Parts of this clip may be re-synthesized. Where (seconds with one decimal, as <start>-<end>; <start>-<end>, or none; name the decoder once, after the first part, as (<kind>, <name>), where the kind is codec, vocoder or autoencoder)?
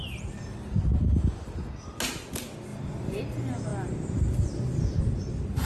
none